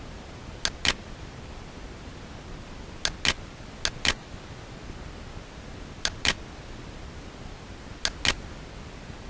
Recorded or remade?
recorded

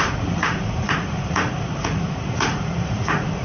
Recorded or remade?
remade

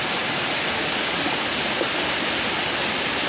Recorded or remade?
recorded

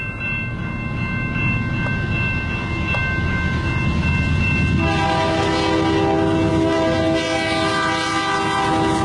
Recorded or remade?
recorded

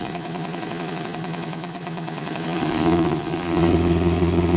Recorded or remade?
remade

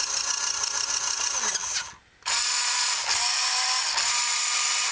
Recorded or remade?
recorded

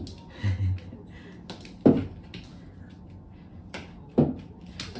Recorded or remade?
recorded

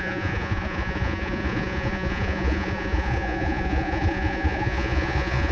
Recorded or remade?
remade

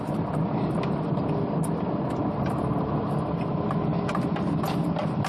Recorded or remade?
recorded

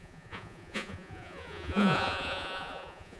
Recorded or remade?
remade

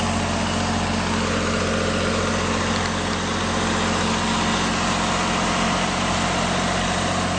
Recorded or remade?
recorded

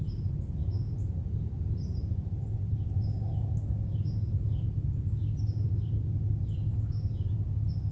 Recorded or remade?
recorded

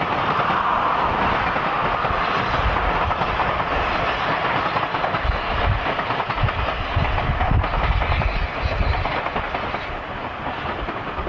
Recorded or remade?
recorded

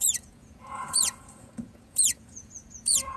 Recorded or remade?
remade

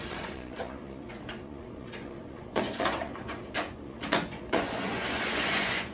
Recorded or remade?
remade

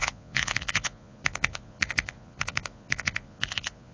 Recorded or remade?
remade